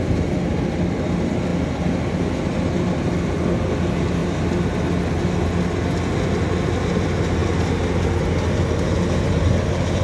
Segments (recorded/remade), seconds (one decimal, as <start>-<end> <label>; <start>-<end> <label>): 0.0-10.0 recorded